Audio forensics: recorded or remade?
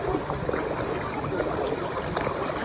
recorded